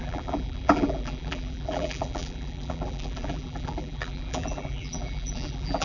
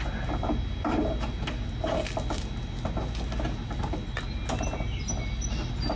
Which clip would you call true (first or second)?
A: second